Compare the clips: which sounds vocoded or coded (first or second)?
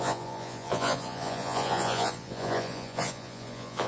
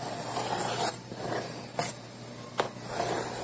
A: first